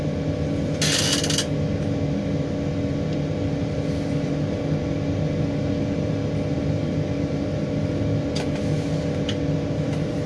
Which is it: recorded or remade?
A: recorded